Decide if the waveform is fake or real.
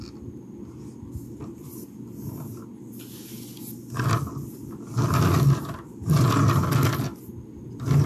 real